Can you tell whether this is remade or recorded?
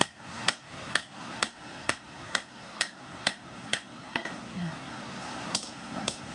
remade